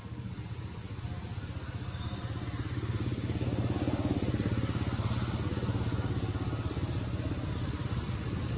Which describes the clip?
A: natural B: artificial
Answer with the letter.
A